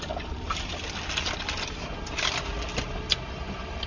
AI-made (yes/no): no